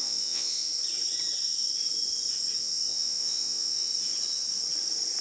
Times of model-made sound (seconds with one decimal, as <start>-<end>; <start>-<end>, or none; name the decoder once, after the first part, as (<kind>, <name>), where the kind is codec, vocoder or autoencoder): 0.0-0.7 (vocoder, Vocos); 2.6-3.9